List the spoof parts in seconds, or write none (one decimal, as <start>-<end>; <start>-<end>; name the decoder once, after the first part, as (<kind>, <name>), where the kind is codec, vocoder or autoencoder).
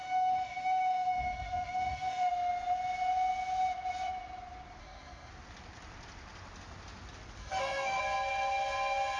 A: 0.0-2.3 (autoencoder, DAC-VAE); 4.8-5.3; 7.4-8.0